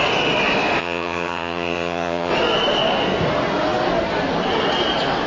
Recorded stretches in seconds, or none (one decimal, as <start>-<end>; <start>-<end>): 0.0-0.8; 2.3-5.3

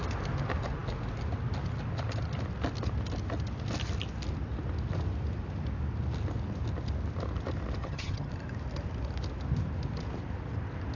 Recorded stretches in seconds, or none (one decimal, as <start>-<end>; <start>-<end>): 0.0-7.8; 8.3-10.9

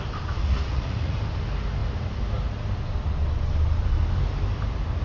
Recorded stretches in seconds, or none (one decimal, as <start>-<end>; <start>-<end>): 0.0-0.4; 1.2-5.0